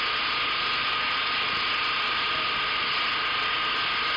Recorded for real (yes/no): yes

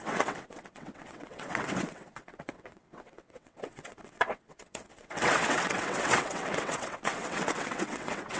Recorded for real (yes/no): no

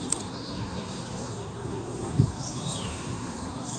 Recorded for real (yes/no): no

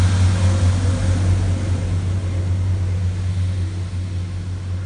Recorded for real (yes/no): yes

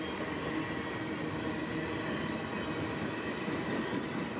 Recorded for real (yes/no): yes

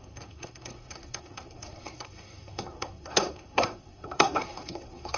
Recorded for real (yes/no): no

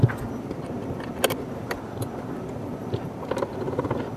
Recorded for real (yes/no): yes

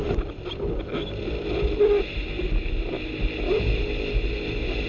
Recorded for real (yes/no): yes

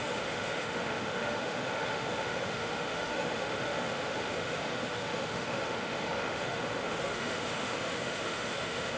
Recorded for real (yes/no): no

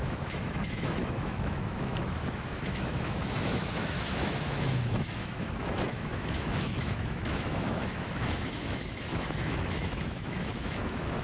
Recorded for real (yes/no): no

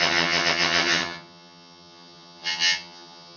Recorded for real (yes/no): no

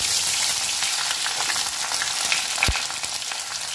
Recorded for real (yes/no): yes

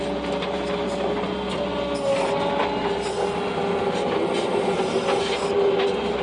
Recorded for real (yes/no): yes